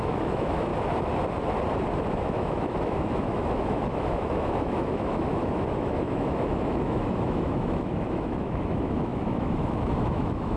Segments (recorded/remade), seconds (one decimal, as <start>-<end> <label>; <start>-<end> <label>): 0.0-0.7 remade; 0.7-2.1 recorded; 2.1-10.6 remade